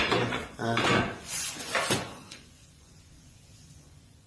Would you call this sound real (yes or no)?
no